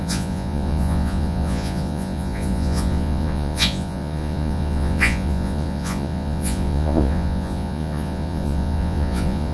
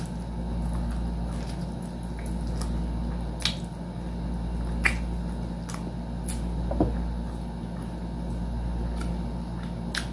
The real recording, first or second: second